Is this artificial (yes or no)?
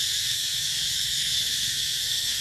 yes